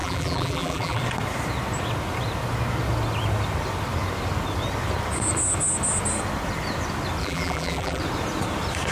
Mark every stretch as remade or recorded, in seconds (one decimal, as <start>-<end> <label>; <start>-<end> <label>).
0.0-1.0 remade; 1.0-7.2 recorded; 7.2-8.0 remade; 8.0-8.9 recorded